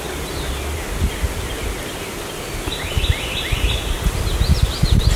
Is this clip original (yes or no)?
yes